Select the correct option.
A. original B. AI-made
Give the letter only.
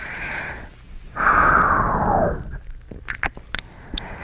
A